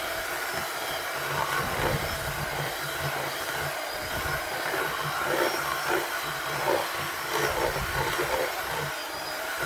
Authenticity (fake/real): real